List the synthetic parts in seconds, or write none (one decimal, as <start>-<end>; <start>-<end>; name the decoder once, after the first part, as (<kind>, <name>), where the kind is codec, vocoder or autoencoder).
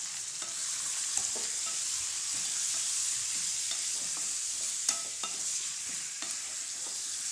5.5-6.2 (vocoder, Vocos)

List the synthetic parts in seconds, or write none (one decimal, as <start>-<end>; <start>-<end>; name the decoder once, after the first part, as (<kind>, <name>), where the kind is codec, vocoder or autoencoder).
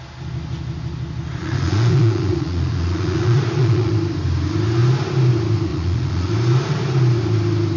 1.4-3.9 (vocoder, Vocos); 5.7-6.3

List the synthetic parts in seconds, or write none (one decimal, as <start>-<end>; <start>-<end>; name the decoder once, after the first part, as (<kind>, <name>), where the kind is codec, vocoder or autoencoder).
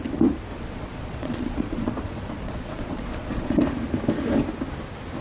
0.5-3.6 (vocoder, Vocos)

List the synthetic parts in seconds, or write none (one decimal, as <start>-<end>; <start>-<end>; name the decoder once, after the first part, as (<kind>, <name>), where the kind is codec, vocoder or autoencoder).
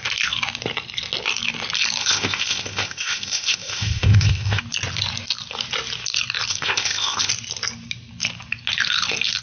2.0-4.6 (codec, ZipCodec); 6.5-7.3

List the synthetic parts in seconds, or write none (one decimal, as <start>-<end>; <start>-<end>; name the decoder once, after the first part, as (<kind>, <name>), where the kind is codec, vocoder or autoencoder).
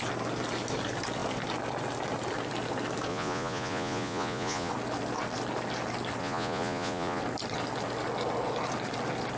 3.1-4.7 (vocoder, Vocos); 6.2-7.2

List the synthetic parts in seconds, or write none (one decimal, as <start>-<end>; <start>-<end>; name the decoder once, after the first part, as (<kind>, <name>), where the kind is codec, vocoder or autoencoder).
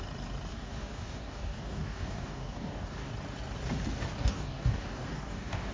0.5-3.1 (codec, DAC); 4.2-5.7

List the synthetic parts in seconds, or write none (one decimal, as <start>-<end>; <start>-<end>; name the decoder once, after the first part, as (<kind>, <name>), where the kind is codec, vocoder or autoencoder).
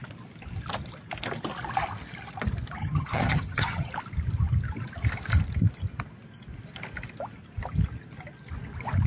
2.8-3.9 (vocoder, HiFi-GAN)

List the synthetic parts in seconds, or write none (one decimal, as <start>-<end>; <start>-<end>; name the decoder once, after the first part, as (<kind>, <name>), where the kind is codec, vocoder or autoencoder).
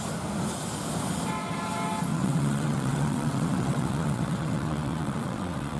2.1-5.8 (vocoder, WaveNeXt)